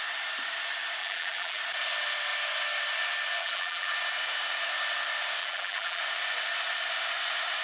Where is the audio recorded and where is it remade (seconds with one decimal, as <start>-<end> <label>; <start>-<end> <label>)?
0.0-1.0 recorded; 1.0-1.6 remade; 1.6-3.4 recorded; 3.4-3.9 remade; 3.9-5.4 recorded; 5.4-6.0 remade; 6.0-7.6 recorded